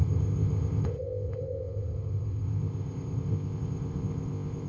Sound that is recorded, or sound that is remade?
remade